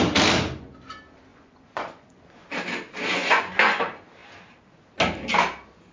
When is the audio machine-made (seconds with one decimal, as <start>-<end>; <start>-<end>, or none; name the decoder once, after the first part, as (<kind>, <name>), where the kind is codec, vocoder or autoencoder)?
1.3-2.2 (vocoder, Vocos); 3.1-3.8